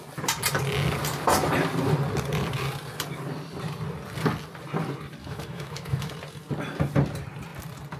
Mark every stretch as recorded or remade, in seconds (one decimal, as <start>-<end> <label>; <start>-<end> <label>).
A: 0.0-5.2 recorded; 5.2-6.1 remade; 6.1-8.0 recorded

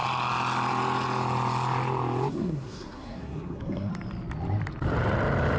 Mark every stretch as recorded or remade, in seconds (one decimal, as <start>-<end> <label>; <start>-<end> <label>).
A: 0.0-2.3 recorded; 2.3-3.9 remade; 3.9-5.6 recorded

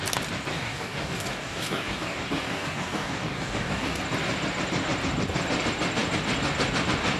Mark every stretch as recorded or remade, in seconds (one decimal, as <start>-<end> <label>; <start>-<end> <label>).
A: 0.0-0.5 recorded; 0.5-4.0 remade; 4.0-7.2 recorded

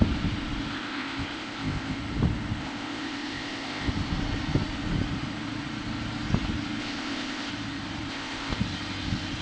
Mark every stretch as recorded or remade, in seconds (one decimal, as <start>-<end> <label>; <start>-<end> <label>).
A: 0.0-0.7 recorded; 0.7-2.0 remade; 2.0-2.6 recorded; 2.6-3.9 remade; 3.9-6.8 recorded; 6.8-7.5 remade; 7.5-8.1 recorded; 8.1-8.6 remade; 8.6-9.4 recorded

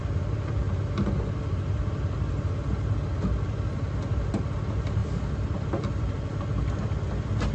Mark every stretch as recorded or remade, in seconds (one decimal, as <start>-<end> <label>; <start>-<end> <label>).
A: 0.0-5.0 recorded; 5.0-6.4 remade; 6.4-7.5 recorded

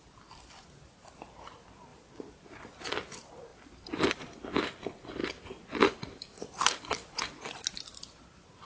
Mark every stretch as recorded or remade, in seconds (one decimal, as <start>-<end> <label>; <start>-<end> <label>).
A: 0.0-1.9 recorded; 1.9-2.8 remade; 2.8-3.5 recorded; 3.5-4.1 remade; 4.1-5.2 recorded; 5.2-6.6 remade; 6.6-8.7 recorded